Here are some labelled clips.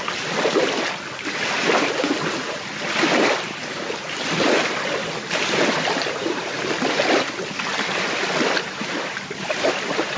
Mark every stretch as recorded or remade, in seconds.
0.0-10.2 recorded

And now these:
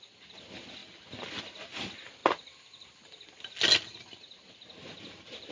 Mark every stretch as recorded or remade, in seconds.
0.0-5.5 recorded

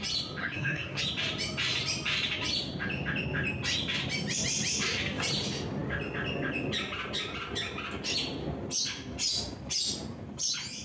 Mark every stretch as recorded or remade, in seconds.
0.0-0.4 recorded; 0.4-1.0 remade; 1.0-10.8 recorded